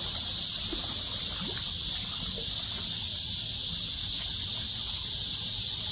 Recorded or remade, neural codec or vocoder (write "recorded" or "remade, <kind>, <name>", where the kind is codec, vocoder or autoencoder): recorded